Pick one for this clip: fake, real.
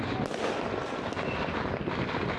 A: real